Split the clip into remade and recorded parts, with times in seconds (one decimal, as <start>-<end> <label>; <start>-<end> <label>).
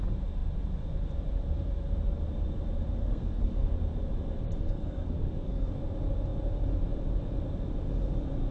0.0-3.0 recorded; 3.0-3.7 remade; 3.7-4.6 recorded; 4.6-5.7 remade; 5.7-8.5 recorded